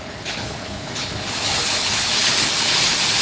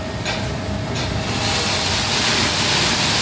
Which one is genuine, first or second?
second